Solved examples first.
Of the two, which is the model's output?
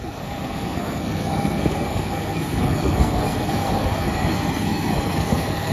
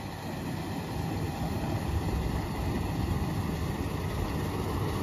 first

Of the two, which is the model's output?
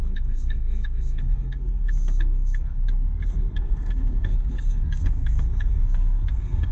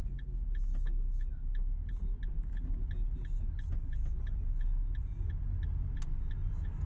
first